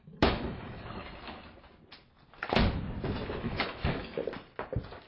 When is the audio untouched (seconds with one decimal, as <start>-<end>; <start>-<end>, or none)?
1.0-3.4; 4.2-5.1